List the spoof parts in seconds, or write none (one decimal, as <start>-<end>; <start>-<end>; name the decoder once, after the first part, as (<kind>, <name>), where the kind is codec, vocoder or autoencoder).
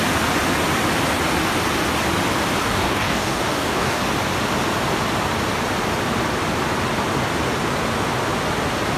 2.6-4.0 (codec, DAC)